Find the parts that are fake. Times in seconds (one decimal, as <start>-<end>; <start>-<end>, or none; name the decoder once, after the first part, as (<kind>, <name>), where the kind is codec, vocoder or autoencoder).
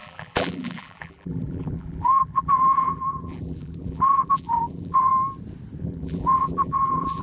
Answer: 0.0-5.1 (vocoder, BigVGAN v2); 5.8-7.2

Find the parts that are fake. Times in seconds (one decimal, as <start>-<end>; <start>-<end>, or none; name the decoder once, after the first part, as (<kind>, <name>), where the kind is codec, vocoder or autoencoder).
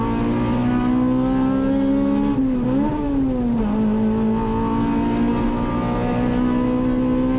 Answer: none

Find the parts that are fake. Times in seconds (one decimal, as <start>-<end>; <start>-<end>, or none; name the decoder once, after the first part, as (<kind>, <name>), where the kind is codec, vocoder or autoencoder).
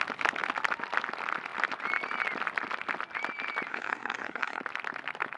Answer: 3.7-4.6 (codec, SNAC)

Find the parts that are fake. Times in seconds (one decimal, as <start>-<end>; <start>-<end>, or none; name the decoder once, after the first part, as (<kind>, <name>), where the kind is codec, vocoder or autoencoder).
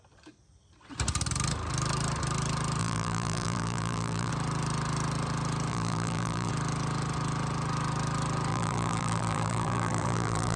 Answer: 2.8-4.3 (vocoder, BigVGAN v2); 5.7-6.5; 8.5-10.6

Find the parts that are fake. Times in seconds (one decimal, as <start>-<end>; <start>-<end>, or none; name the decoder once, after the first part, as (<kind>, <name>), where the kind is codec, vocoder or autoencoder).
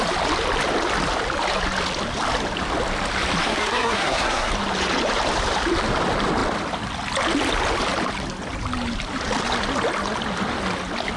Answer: 3.4-4.5 (codec, SNAC)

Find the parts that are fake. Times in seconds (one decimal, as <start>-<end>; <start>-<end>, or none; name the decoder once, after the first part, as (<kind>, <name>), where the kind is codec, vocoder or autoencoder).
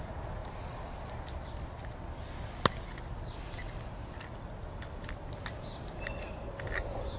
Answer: none